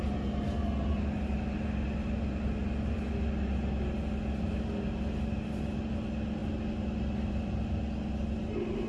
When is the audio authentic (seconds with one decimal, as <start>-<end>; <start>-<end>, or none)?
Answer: 0.0-8.9